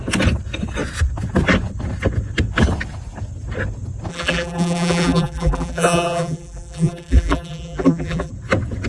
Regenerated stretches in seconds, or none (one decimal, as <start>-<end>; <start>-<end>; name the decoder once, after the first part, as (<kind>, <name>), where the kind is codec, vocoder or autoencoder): 4.1-8.3 (vocoder, BigVGAN v2)